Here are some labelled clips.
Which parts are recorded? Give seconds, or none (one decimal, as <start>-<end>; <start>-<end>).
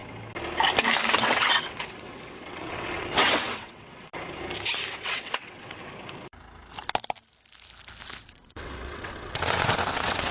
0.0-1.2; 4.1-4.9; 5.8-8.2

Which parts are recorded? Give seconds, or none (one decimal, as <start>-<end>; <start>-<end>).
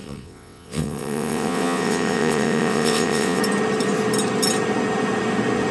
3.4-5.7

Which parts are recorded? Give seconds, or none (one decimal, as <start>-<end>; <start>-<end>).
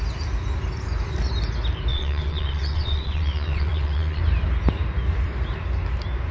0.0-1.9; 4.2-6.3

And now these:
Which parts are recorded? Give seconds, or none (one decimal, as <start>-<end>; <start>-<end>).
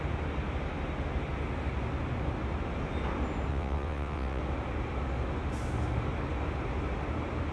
0.0-3.5; 4.4-7.5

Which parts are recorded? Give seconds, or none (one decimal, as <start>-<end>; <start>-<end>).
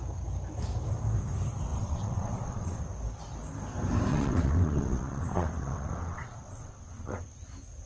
0.0-1.7; 2.8-4.1; 7.2-7.9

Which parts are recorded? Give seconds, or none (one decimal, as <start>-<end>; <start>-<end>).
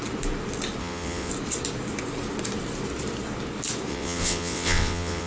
0.0-0.8; 1.3-3.9